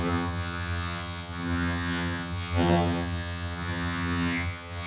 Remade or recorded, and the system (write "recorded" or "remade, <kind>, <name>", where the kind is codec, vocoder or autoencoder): remade, vocoder, HiFi-GAN